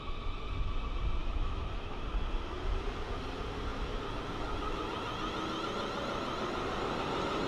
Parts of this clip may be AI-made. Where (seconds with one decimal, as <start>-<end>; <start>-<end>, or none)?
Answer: 1.2-2.0